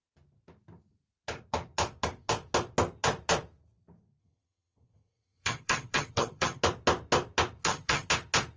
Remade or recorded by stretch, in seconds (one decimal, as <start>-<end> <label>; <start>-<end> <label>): 0.0-4.2 recorded; 4.2-6.6 remade; 6.6-7.6 recorded; 7.6-8.1 remade; 8.1-8.6 recorded